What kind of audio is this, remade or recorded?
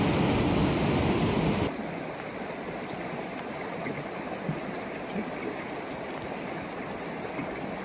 recorded